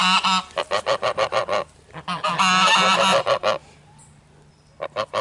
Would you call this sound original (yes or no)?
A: yes